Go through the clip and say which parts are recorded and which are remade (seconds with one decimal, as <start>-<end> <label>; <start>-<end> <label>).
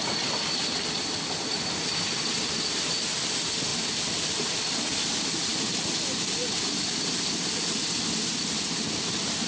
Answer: 0.0-9.5 recorded